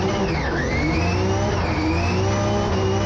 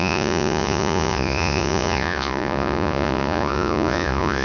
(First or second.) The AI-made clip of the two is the second